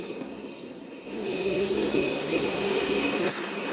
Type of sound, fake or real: fake